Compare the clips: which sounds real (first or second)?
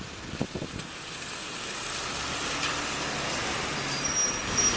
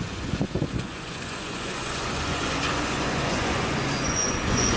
first